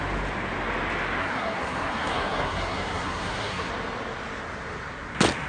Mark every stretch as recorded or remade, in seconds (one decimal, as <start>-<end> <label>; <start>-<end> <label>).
0.0-1.2 recorded; 1.2-3.7 remade; 3.7-5.5 recorded